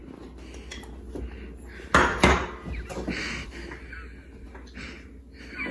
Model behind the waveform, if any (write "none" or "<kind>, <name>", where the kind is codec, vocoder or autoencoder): none